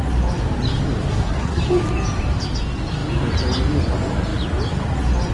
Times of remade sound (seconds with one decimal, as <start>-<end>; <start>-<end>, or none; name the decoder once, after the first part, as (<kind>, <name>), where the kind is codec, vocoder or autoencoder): 1.1-1.6 (codec, SNAC)